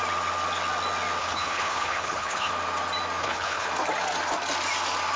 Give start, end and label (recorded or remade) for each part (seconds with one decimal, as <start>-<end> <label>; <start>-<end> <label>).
0.0-1.2 recorded; 1.2-2.5 remade; 2.5-3.2 recorded; 3.2-3.7 remade; 3.7-5.2 recorded